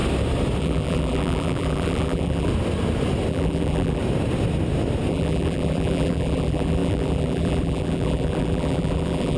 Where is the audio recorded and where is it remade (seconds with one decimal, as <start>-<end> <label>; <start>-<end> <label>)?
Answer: 0.0-0.6 recorded; 0.6-2.5 remade; 2.5-3.3 recorded; 3.3-4.0 remade; 4.0-5.1 recorded; 5.1-9.4 remade